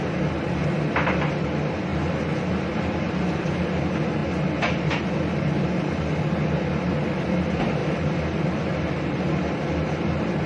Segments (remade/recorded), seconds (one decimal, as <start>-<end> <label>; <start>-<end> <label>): 0.0-0.6 recorded; 0.6-1.4 remade; 1.4-1.9 recorded; 1.9-3.8 remade; 3.8-7.8 recorded; 7.8-9.3 remade; 9.3-10.5 recorded